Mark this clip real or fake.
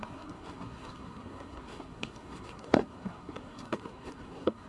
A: fake